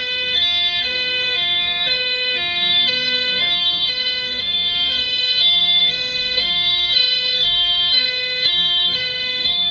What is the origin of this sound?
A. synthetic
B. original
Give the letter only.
A